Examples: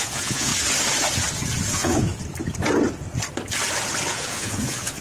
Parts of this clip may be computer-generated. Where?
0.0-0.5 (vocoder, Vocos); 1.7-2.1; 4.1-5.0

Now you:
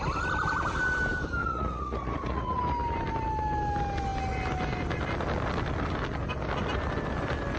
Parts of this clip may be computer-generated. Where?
1.4-2.6 (vocoder, Vocos)

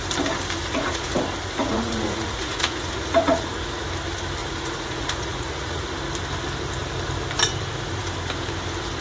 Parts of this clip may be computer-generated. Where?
0.6-1.2 (vocoder, Vocos); 1.6-3.8; 4.4-5.9

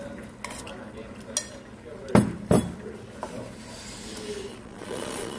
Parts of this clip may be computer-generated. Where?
4.5-5.4 (vocoder, Vocos)